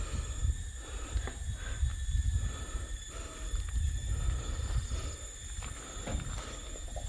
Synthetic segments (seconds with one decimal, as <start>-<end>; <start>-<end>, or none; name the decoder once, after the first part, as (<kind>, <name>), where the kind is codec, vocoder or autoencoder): none